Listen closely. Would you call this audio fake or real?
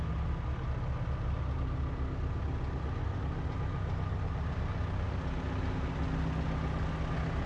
real